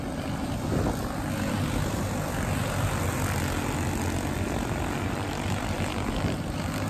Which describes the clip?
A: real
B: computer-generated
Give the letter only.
A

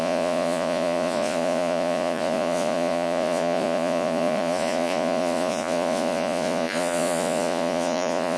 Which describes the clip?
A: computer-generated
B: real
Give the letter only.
A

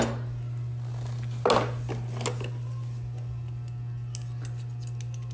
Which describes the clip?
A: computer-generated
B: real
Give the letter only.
B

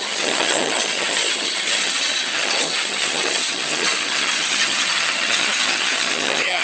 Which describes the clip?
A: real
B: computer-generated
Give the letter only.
B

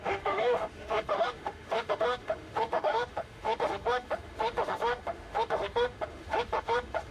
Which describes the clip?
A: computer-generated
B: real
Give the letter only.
A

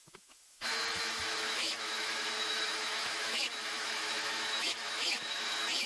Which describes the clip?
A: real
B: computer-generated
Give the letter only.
B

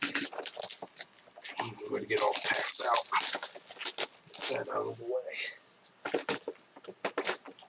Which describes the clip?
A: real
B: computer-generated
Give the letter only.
A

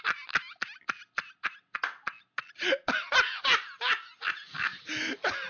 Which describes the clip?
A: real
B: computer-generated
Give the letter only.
A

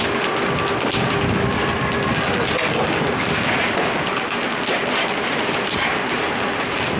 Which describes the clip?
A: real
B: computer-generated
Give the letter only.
A